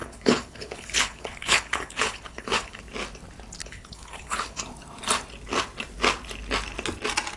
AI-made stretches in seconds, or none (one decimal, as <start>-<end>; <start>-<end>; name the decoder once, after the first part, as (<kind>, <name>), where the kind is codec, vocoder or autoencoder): 0.0-2.8 (codec, HILCodec); 3.6-4.6